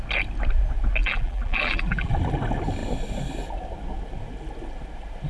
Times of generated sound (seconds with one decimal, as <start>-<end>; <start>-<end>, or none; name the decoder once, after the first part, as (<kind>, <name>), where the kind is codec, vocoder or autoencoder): 1.0-2.1 (vocoder, BigVGAN v2)